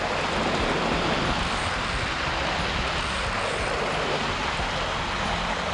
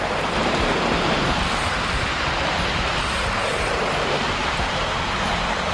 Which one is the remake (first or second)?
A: second